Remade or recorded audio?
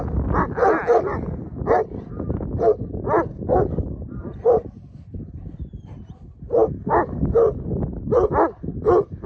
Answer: recorded